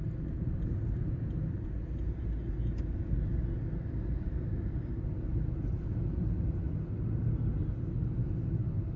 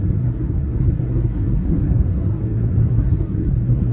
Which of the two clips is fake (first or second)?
second